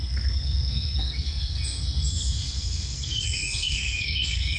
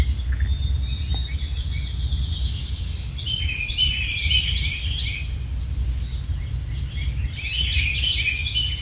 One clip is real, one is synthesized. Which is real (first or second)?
second